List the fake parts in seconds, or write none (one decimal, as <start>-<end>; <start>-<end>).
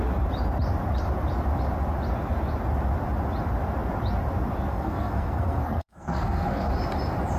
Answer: 4.7-6.7